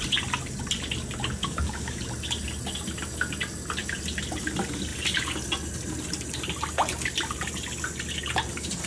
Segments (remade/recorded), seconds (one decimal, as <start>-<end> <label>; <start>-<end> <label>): 0.0-1.4 recorded; 1.4-2.0 remade; 2.0-8.9 recorded